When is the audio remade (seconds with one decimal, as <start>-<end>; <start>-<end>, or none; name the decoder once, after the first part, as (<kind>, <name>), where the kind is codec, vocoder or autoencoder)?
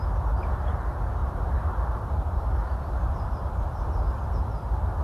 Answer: 1.2-4.2 (vocoder, BigVGAN v2)